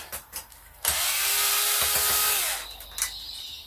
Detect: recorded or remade recorded